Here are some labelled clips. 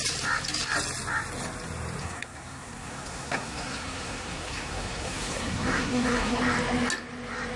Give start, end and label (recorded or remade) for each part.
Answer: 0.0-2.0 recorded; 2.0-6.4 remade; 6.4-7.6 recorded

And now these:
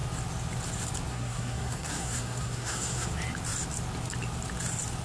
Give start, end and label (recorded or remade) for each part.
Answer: 0.0-1.1 recorded; 1.1-3.1 remade; 3.1-5.0 recorded

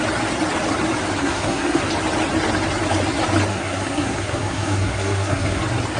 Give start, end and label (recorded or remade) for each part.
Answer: 0.0-1.2 recorded; 1.2-1.8 remade; 1.8-3.5 recorded; 3.5-5.6 remade; 5.6-6.0 recorded